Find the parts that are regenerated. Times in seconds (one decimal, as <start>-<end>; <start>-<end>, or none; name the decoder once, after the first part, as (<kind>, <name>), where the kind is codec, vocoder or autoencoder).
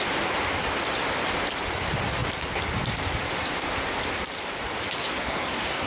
5.0-5.9 (codec, SNAC)